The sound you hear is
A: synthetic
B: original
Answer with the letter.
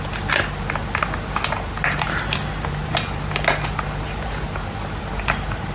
B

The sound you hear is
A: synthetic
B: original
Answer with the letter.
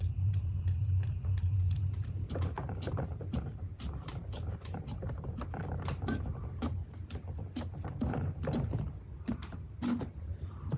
A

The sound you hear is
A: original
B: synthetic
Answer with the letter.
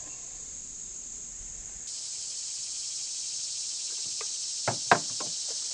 A